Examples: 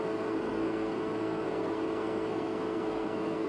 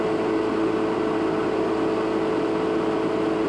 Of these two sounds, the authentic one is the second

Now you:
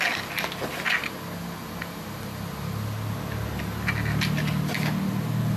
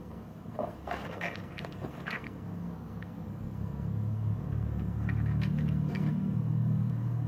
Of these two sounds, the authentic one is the first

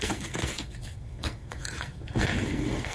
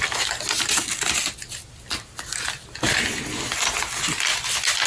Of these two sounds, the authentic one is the second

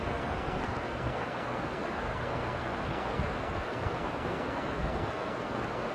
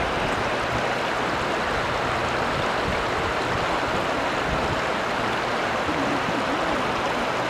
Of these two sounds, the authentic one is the second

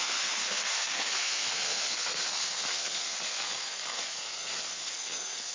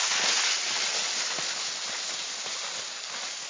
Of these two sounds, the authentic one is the second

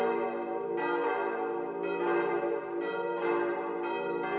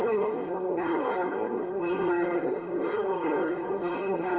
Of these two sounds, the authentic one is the first